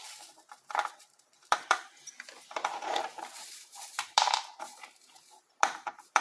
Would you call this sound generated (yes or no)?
yes